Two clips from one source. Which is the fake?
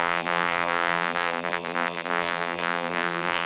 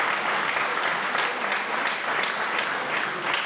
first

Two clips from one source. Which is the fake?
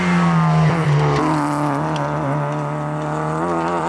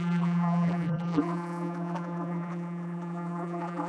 second